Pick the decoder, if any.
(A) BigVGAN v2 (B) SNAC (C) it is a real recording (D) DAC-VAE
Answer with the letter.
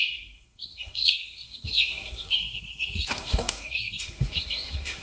B